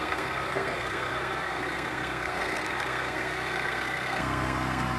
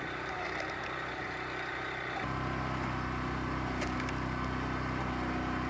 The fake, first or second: first